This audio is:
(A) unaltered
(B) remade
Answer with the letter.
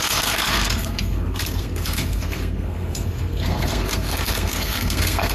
B